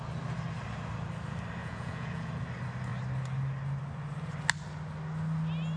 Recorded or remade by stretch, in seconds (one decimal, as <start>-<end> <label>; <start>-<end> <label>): 0.0-1.6 recorded; 1.6-2.3 remade; 2.3-5.8 recorded